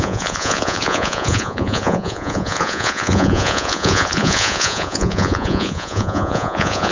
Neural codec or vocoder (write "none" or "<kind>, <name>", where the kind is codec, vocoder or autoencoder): vocoder, Vocos